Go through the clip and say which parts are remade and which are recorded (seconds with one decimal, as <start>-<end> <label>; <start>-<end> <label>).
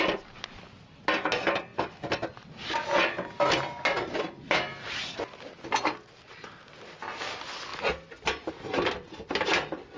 0.0-10.0 recorded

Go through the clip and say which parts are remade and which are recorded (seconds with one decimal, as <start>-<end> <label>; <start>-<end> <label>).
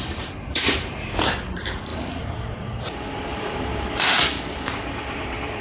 0.0-5.6 remade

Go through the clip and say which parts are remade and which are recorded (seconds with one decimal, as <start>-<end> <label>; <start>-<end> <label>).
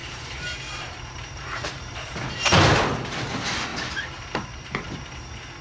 0.0-2.6 remade; 2.6-3.7 recorded; 3.7-4.9 remade; 4.9-5.6 recorded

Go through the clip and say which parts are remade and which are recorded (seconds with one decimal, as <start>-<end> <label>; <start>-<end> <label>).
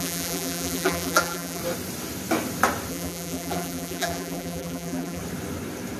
0.0-1.6 remade; 1.6-2.9 recorded; 2.9-5.2 remade; 5.2-6.0 recorded